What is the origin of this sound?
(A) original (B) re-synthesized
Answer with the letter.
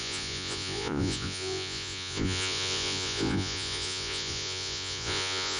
B